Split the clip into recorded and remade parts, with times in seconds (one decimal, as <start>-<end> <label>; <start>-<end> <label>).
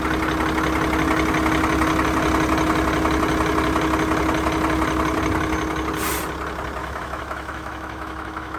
0.0-6.8 recorded; 6.8-8.6 remade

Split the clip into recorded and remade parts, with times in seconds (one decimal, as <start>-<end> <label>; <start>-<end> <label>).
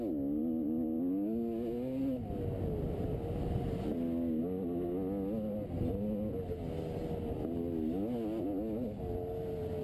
0.0-9.8 recorded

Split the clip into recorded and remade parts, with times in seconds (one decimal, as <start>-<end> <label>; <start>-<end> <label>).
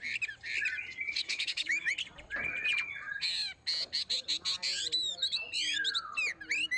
0.0-1.2 recorded; 1.2-1.9 remade; 1.9-6.8 recorded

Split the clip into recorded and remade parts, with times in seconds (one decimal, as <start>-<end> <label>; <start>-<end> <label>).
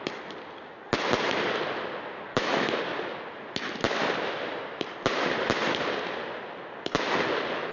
0.0-2.3 recorded; 2.3-2.8 remade; 2.8-7.7 recorded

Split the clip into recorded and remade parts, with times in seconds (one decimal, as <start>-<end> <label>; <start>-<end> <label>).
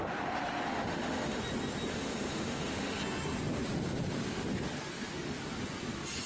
0.0-0.7 recorded; 0.7-1.4 remade; 1.4-1.9 recorded; 1.9-3.0 remade; 3.0-6.3 recorded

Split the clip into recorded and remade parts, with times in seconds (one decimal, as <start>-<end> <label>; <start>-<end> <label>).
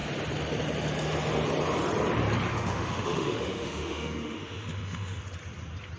0.0-2.5 recorded; 2.5-5.2 remade; 5.2-6.0 recorded